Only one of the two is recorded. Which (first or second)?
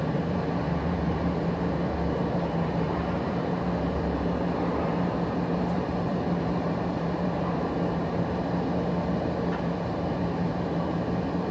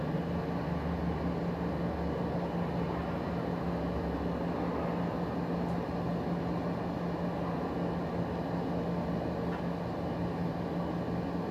second